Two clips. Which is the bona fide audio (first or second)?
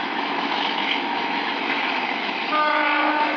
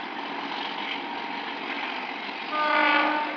second